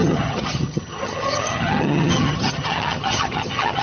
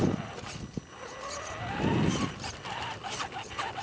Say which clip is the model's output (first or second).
first